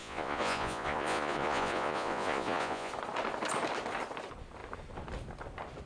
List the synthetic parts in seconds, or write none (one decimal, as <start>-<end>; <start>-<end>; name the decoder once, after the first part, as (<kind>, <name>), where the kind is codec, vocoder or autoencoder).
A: 0.0-2.9 (vocoder, Vocos)